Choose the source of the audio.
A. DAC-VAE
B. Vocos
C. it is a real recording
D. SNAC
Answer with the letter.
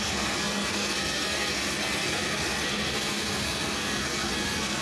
D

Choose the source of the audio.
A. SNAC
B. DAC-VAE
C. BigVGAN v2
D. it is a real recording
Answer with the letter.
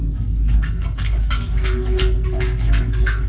A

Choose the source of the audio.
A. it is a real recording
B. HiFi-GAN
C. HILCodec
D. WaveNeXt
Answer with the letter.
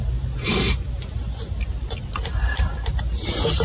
A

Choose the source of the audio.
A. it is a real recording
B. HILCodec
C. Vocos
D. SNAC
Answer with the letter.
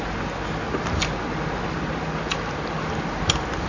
A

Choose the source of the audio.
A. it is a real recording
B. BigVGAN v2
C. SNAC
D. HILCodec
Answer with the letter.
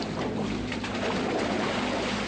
B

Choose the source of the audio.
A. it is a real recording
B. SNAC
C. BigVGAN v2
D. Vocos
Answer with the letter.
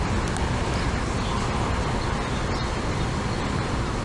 A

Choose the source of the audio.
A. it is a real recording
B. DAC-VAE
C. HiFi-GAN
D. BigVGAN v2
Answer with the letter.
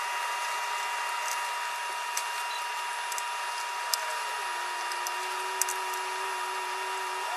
A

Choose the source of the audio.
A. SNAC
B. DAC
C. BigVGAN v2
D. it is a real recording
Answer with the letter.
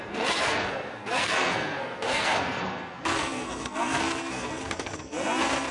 A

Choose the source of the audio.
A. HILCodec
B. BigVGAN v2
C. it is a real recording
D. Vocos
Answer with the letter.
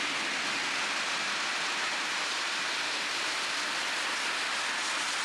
C